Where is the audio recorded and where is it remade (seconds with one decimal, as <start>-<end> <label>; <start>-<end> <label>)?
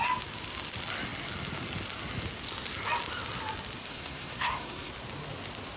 0.0-3.9 recorded; 3.9-4.9 remade; 4.9-5.8 recorded